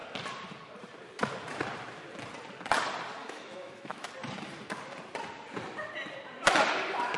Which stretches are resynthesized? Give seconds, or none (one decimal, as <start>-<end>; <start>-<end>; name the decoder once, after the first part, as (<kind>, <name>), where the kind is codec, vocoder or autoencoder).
3.2-4.1 (autoencoder, DAC-VAE)